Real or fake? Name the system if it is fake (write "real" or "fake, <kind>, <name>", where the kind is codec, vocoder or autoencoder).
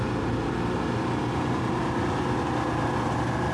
fake, vocoder, BigVGAN v2